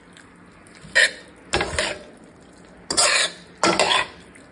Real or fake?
real